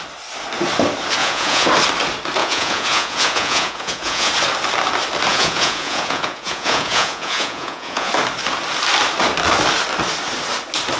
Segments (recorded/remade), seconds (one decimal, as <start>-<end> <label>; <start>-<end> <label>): 0.0-1.2 recorded; 1.2-1.7 remade; 1.7-2.4 recorded; 2.4-4.3 remade; 4.3-5.3 recorded; 5.3-8.1 remade; 8.1-11.0 recorded